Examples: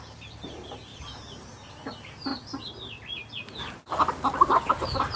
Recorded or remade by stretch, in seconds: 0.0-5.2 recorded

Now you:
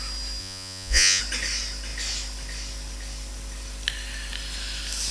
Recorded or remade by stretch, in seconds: 0.0-0.4 recorded; 0.4-1.2 remade; 1.2-5.1 recorded

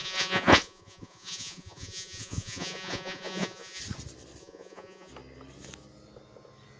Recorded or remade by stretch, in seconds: 0.0-3.8 remade; 3.8-4.4 recorded; 4.4-5.1 remade; 5.1-6.8 recorded